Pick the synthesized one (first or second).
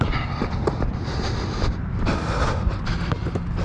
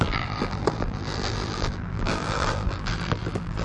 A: second